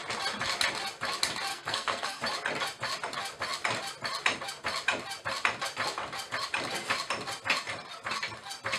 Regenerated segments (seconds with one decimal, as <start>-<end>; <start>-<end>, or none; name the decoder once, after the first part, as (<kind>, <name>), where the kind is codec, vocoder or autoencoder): 1.5-2.2 (codec, SNAC)